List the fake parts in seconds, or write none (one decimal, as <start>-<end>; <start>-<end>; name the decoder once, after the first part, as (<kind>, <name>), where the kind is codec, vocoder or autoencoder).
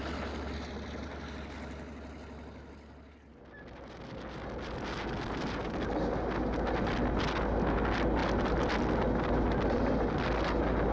none